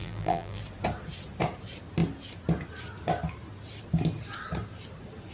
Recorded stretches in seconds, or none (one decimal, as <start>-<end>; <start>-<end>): 0.6-5.3